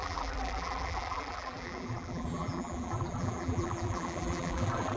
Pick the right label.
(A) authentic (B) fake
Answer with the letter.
B